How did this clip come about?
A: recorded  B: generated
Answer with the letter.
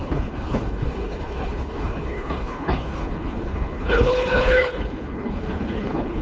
B